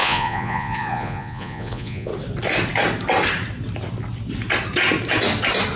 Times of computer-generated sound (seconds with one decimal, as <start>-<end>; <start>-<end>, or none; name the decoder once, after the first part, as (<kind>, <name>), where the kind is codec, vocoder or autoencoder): 0.0-2.1 (vocoder, Vocos)